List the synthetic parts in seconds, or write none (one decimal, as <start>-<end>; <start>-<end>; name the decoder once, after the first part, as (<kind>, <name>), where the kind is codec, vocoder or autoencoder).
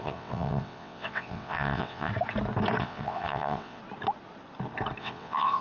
0.0-2.1 (vocoder, WaveNeXt); 2.8-3.8; 5.0-5.6